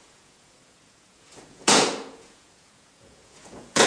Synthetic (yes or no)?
yes